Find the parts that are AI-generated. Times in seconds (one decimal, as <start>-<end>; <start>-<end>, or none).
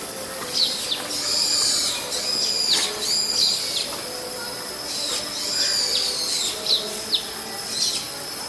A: none